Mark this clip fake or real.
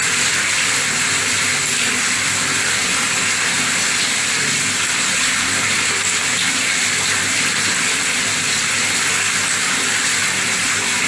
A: real